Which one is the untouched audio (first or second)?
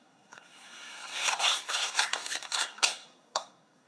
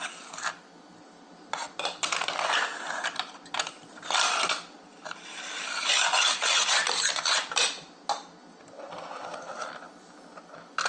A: second